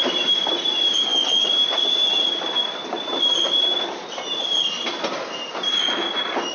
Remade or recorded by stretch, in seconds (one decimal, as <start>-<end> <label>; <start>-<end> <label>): 0.0-6.5 recorded